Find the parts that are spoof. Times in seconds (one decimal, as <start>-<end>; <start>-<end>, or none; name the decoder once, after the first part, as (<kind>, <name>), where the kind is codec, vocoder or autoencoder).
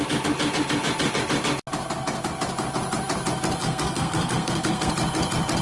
3.6-4.9 (codec, SNAC)